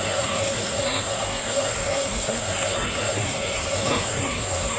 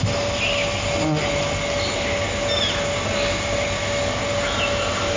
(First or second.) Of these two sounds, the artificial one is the first